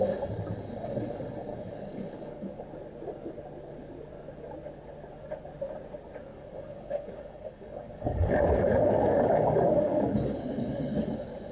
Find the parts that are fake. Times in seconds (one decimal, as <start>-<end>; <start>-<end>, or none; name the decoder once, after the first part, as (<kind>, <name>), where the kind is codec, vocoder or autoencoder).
1.5-2.6 (codec, DAC); 6.3-11.1